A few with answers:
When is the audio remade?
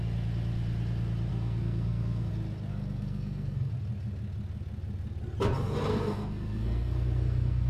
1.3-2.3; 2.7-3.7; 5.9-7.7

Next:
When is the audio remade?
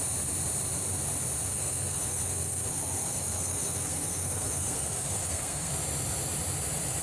1.5-5.7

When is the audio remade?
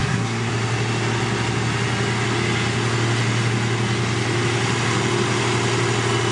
0.0-0.5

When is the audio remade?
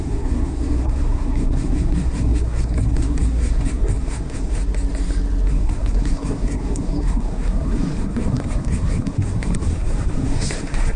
0.0-4.6; 5.5-11.0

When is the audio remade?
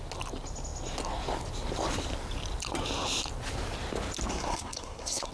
4.3-5.3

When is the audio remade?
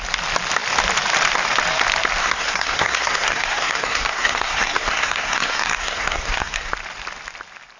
2.2-6.7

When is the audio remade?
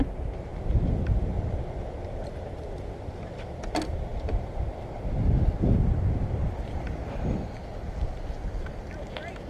none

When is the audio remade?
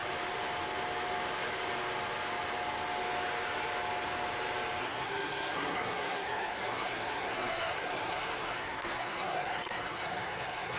4.8-10.8